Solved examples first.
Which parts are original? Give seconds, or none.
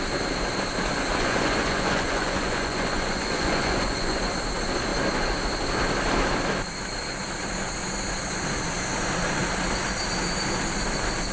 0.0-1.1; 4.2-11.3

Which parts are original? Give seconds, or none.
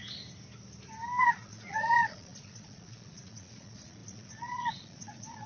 0.0-1.2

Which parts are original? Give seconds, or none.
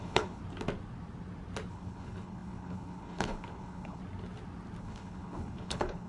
0.4-1.7; 4.0-4.8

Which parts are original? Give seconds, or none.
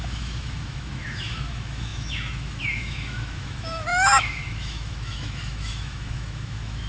none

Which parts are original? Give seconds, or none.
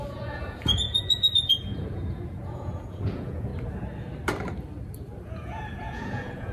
3.5-5.2